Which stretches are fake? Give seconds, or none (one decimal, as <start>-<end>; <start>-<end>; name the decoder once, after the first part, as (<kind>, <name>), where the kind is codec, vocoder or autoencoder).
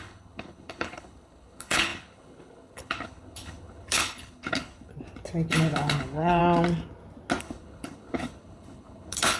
0.0-4.9 (codec, HILCodec); 5.5-6.4; 7.4-9.4